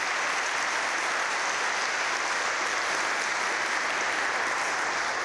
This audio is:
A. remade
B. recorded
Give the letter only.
B